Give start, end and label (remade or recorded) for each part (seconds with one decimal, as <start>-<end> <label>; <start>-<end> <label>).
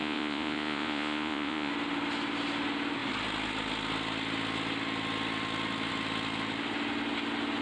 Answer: 0.0-1.7 remade; 1.7-7.6 recorded